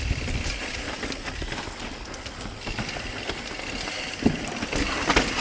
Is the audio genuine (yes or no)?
yes